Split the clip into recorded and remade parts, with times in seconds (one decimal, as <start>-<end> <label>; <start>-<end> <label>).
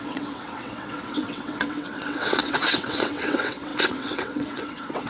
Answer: 0.0-5.1 remade